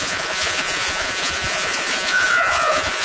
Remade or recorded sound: remade